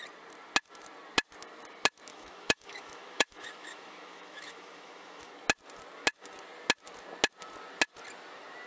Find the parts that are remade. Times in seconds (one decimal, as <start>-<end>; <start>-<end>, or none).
2.1-5.3